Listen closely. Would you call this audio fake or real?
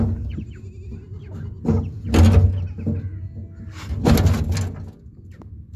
real